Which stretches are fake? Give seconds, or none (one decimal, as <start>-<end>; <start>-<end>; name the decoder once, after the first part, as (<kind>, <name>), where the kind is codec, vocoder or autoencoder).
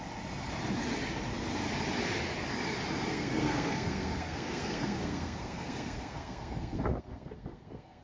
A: 3.1-8.0 (codec, SNAC)